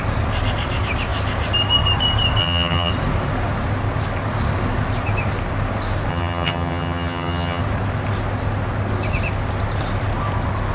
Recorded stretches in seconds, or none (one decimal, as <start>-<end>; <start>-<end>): 0.0-2.4; 2.9-6.1; 7.6-10.7